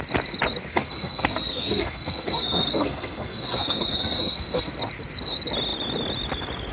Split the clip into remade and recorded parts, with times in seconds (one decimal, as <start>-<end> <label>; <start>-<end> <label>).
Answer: 0.0-0.7 recorded; 0.7-4.7 remade; 4.7-6.7 recorded